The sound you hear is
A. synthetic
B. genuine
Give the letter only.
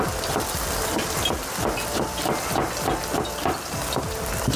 B